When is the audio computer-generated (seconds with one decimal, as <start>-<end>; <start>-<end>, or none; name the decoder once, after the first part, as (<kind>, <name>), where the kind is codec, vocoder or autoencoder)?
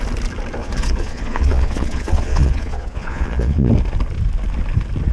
0.6-3.7 (vocoder, Vocos)